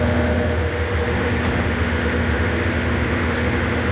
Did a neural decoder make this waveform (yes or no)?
yes